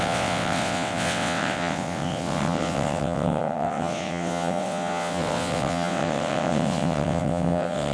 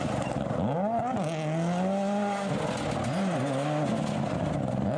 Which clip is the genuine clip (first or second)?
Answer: second